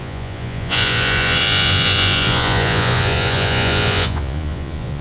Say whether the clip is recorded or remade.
remade